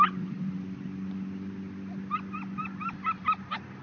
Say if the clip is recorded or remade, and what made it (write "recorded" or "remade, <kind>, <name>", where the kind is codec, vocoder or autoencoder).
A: recorded